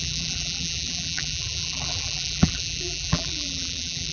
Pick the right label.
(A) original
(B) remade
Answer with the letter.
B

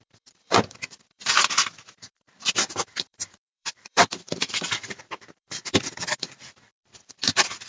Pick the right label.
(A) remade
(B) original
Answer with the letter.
A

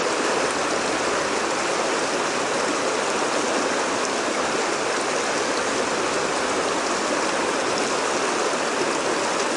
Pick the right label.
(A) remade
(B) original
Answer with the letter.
B